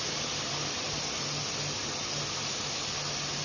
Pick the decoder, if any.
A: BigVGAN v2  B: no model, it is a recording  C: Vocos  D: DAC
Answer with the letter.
B